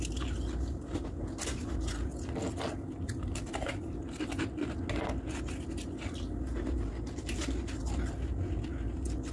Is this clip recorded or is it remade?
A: recorded